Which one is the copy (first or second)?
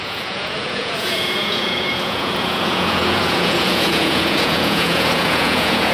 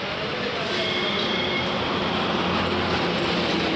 first